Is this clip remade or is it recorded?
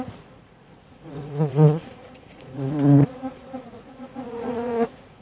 remade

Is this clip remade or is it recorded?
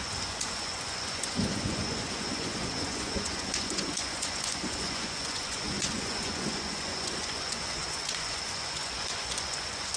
remade